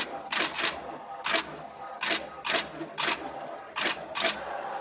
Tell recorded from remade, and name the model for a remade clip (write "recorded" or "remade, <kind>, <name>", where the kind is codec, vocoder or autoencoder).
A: recorded